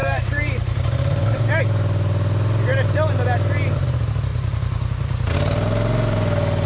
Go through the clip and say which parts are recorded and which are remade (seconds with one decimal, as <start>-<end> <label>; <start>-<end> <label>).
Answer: 0.0-1.6 remade; 1.6-4.3 recorded; 4.3-5.3 remade; 5.3-6.7 recorded